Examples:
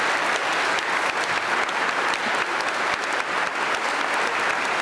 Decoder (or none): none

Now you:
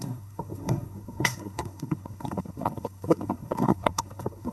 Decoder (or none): codec, SNAC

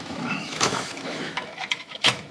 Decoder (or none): autoencoder, DAC-VAE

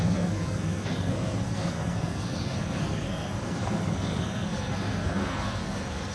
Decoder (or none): codec, SNAC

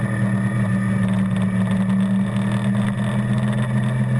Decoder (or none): none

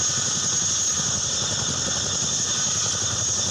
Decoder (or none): none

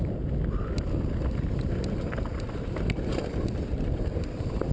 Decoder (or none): none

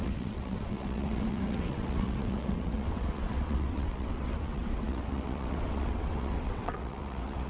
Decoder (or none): vocoder, WaveNeXt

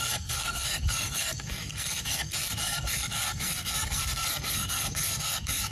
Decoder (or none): codec, SNAC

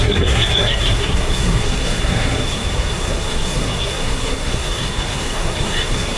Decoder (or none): codec, SNAC